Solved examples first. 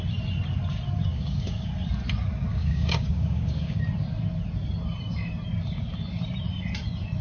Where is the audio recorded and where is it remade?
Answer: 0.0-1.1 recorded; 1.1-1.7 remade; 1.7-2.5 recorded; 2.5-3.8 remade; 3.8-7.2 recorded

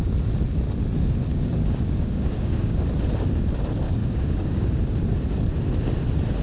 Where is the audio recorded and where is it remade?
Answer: 0.0-1.3 recorded; 1.3-2.8 remade; 2.8-4.0 recorded; 4.0-4.8 remade; 4.8-6.4 recorded

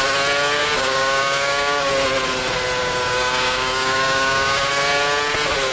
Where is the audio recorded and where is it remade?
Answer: 0.0-0.6 recorded; 0.6-1.9 remade; 1.9-2.8 recorded; 2.8-4.7 remade; 4.7-5.7 recorded

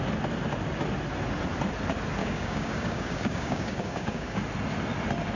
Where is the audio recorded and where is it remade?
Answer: 0.0-2.2 recorded; 2.2-4.4 remade; 4.4-5.4 recorded

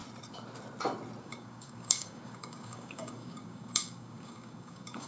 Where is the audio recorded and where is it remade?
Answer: 0.0-1.2 recorded; 1.2-5.1 remade

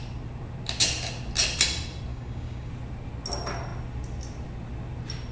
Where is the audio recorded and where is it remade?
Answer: 0.0-2.1 recorded; 2.1-2.7 remade; 2.7-5.3 recorded

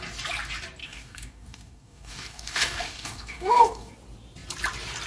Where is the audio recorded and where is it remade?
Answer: 0.0-0.8 recorded; 0.8-3.9 remade; 3.9-5.1 recorded

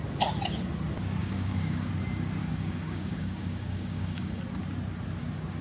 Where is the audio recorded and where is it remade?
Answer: 0.0-1.2 recorded; 1.2-1.9 remade; 1.9-2.4 recorded; 2.4-4.4 remade; 4.4-5.6 recorded